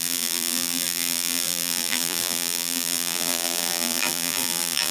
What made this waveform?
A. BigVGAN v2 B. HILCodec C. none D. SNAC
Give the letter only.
A